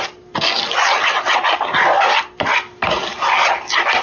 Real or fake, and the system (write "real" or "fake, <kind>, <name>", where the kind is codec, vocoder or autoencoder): real